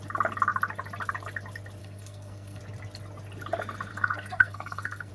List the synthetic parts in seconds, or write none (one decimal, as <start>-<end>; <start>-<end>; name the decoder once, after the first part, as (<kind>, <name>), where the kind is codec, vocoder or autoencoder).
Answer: 1.8-2.6 (codec, SNAC); 3.9-5.1